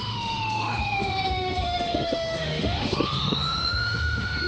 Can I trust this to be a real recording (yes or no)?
no